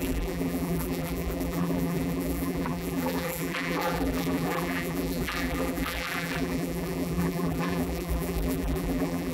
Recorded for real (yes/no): no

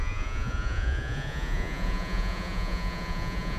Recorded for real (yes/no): no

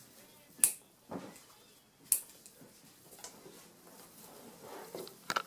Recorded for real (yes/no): yes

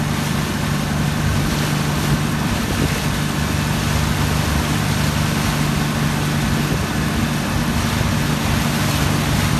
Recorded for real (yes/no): yes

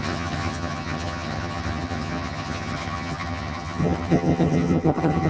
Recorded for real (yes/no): no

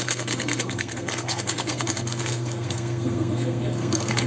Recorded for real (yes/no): no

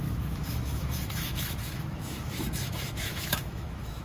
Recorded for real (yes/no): no